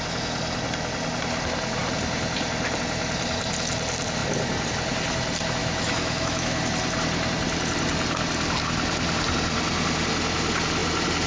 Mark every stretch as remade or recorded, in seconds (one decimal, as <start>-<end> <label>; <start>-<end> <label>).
0.0-5.6 recorded; 5.6-6.6 remade; 6.6-11.3 recorded